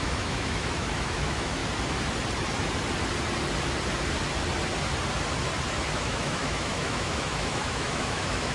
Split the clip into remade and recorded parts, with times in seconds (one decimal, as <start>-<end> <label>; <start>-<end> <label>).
0.0-1.6 remade; 1.6-5.9 recorded; 5.9-8.5 remade